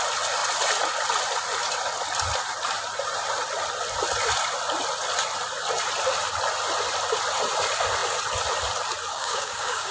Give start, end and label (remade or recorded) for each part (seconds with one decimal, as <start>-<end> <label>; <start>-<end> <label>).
0.0-9.1 recorded; 9.1-9.9 remade